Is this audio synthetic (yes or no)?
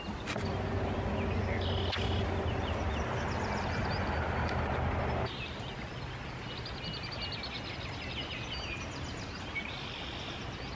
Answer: no